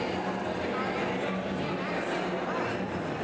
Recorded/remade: recorded